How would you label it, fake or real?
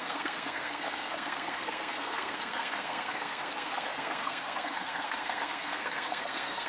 fake